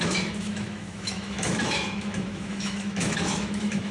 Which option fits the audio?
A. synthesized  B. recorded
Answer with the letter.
A